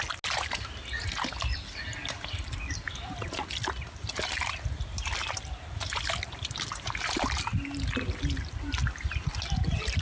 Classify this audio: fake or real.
real